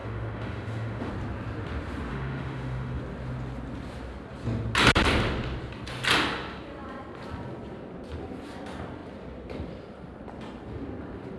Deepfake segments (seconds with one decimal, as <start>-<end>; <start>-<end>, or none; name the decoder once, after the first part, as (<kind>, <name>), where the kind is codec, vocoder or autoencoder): 0.0-1.1 (autoencoder, DAC-VAE); 2.1-3.0